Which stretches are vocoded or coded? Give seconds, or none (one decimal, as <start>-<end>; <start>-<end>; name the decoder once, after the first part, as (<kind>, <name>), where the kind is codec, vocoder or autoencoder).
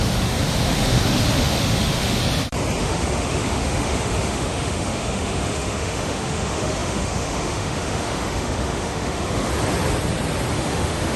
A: 0.0-2.2 (autoencoder, DAC-VAE); 2.8-9.5; 10.5-11.2